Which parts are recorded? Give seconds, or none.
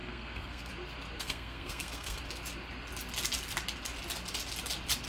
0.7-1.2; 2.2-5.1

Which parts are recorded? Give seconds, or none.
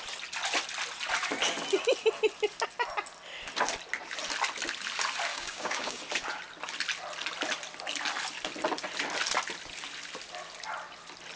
0.0-5.3; 6.0-11.4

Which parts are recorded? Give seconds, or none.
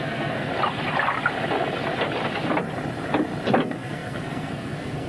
0.5-3.6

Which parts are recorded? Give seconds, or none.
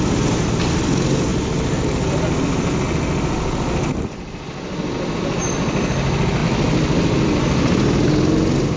0.0-8.8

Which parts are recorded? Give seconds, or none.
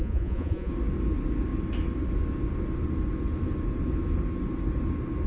0.7-5.3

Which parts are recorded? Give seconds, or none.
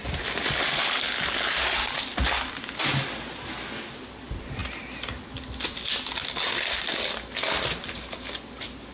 0.0-8.9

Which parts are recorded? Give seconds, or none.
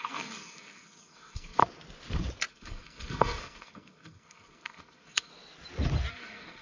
1.6-2.5; 5.3-6.1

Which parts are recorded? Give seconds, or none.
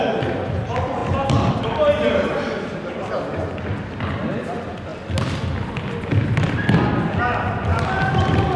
0.0-8.6